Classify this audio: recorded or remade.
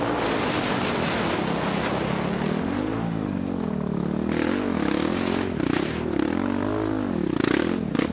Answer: recorded